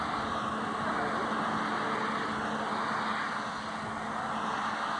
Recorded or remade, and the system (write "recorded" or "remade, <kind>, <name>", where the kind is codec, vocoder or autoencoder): recorded